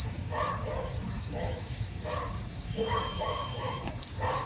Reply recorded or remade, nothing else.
remade